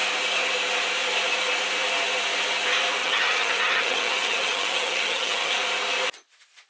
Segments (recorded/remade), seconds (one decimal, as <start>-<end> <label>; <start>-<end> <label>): 0.0-3.0 recorded; 3.0-5.5 remade; 5.5-6.7 recorded